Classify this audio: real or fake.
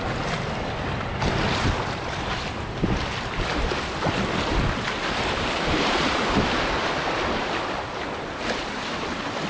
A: real